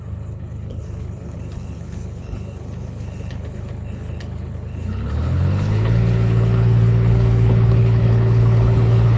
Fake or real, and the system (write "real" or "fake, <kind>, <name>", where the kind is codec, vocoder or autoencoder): fake, codec, HILCodec